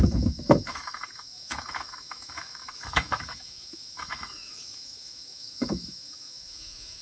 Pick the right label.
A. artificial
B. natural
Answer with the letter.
A